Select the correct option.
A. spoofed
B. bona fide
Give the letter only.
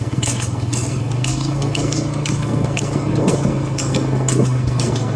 A